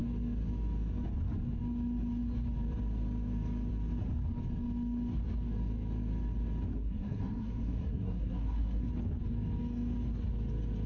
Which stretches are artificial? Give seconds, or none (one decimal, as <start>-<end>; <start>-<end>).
6.7-8.9